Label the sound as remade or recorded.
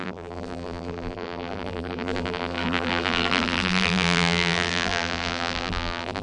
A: remade